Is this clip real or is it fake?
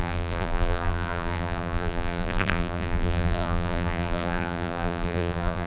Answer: fake